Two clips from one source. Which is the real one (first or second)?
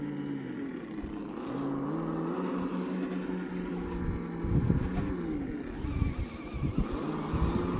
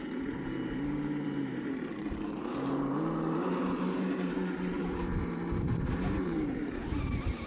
first